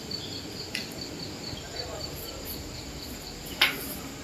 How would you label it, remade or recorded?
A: recorded